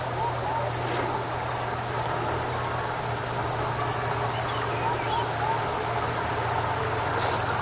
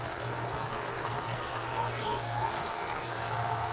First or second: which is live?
first